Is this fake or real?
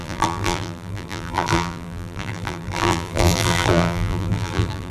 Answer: fake